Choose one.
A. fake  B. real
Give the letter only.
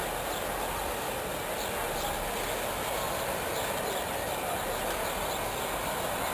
B